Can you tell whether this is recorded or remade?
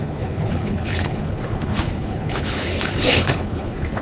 remade